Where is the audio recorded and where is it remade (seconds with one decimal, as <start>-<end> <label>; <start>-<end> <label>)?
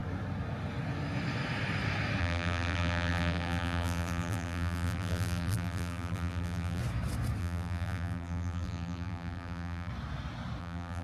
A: 0.0-2.2 recorded; 2.2-6.8 remade; 6.8-7.4 recorded; 7.4-9.9 remade; 9.9-10.6 recorded; 10.6-11.0 remade